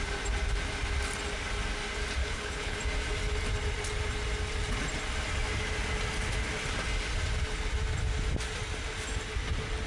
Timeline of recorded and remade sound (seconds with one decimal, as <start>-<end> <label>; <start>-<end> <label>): 0.0-2.2 recorded; 2.2-2.8 remade; 2.8-9.9 recorded